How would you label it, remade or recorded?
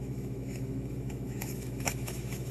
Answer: remade